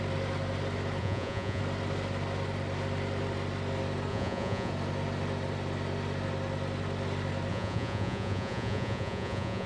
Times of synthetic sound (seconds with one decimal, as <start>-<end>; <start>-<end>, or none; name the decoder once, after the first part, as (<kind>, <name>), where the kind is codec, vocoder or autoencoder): 1.0-1.6 (vocoder, Vocos); 4.1-4.7; 7.5-9.7

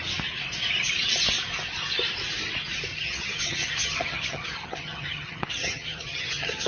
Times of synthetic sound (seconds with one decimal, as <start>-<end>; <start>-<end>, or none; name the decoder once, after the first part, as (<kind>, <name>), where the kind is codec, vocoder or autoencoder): 2.9-6.7 (vocoder, HiFi-GAN)